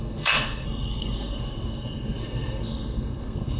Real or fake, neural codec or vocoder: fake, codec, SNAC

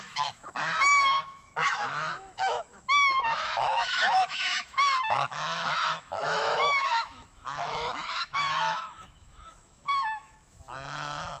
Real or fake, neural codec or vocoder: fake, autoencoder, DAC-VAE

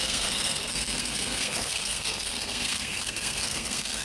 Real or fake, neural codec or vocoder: fake, codec, SNAC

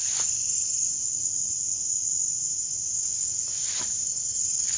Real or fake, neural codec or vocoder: real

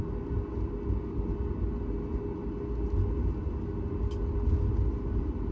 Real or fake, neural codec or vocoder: real